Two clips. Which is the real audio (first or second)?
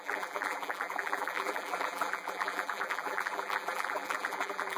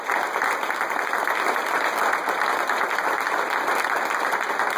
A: second